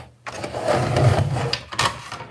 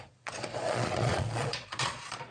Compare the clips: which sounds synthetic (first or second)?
second